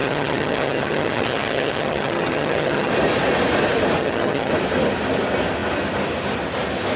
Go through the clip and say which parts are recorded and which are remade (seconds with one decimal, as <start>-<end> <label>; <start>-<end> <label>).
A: 0.0-2.9 remade; 2.9-4.0 recorded; 4.0-4.5 remade; 4.5-7.0 recorded